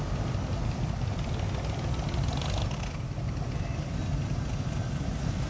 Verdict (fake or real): real